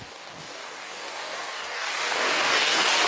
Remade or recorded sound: remade